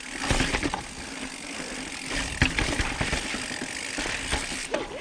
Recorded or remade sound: recorded